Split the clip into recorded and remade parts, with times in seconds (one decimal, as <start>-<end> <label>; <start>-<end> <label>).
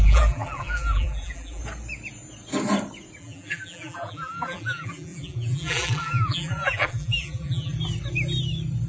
0.0-1.6 remade; 1.6-3.2 recorded; 3.2-7.7 remade; 7.7-8.9 recorded